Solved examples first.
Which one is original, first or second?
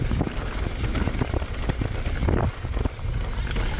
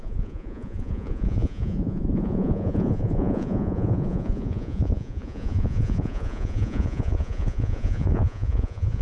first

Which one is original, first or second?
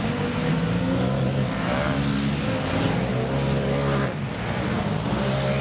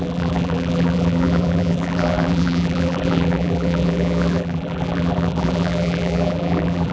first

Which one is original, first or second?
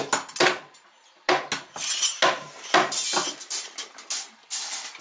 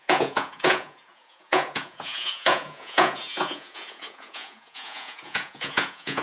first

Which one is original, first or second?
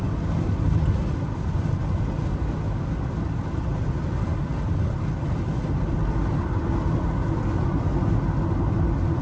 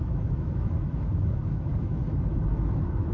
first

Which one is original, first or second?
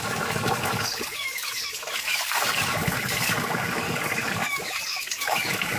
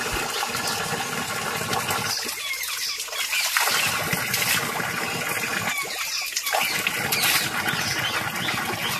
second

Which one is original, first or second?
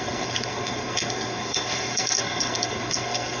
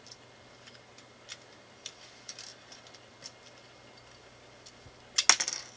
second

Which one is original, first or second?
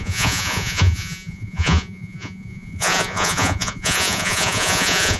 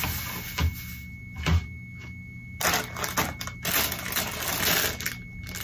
second